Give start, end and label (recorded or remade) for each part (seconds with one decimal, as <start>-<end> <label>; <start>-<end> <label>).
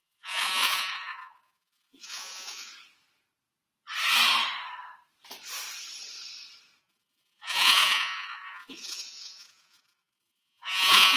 0.0-2.7 remade; 2.7-6.8 recorded; 6.8-11.2 remade